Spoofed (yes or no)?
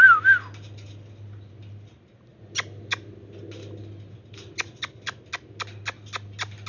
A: no